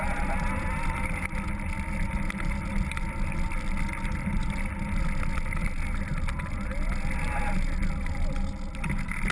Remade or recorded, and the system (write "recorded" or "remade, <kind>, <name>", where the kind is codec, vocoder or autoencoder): recorded